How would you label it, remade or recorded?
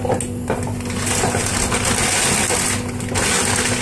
recorded